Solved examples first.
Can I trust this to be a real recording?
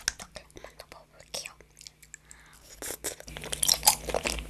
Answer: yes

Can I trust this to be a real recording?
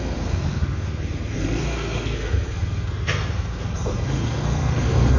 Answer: no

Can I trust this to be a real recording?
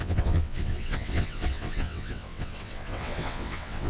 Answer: no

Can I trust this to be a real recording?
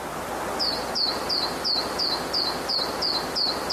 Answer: yes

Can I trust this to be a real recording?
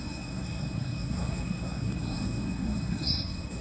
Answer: no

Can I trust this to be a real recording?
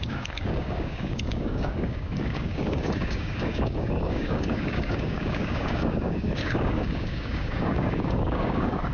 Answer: no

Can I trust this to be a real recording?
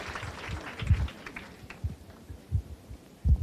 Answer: yes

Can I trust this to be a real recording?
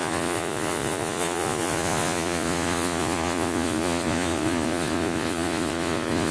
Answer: no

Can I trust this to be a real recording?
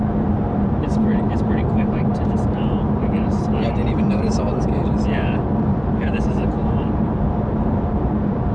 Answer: no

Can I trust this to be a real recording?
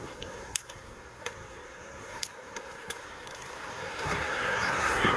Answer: no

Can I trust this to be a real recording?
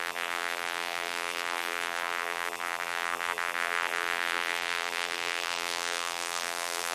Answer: no